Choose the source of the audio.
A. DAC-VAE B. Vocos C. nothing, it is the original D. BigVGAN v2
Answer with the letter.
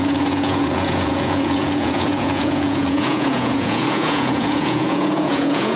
B